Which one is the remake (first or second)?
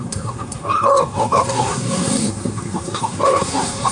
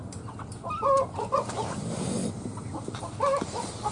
first